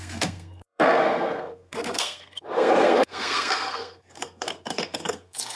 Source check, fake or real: fake